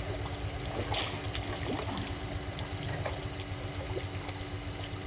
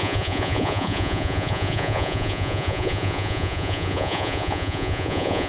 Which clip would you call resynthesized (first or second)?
second